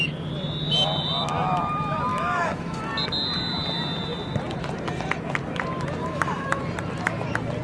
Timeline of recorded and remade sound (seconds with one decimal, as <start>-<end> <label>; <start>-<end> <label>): 0.0-2.1 recorded; 2.1-2.8 remade; 2.8-6.0 recorded; 6.0-6.6 remade; 6.6-7.6 recorded